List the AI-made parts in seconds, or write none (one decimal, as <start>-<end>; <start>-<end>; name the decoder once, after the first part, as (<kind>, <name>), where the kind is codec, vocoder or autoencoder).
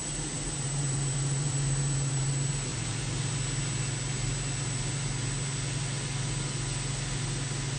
0.0-2.3 (vocoder, BigVGAN v2); 2.7-3.3